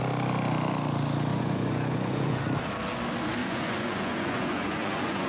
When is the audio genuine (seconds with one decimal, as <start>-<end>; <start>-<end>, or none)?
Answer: 0.0-1.3; 2.4-3.4